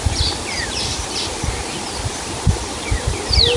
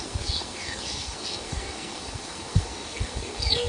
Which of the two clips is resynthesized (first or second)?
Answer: second